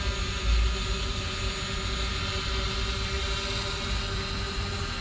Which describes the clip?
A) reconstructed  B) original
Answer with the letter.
B